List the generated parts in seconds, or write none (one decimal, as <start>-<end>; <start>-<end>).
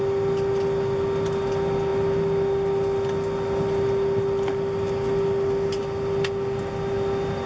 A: none